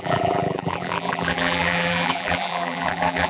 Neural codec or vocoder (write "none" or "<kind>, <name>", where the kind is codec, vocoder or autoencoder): vocoder, BigVGAN v2